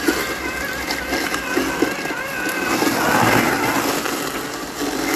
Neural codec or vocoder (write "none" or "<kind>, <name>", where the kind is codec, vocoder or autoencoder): none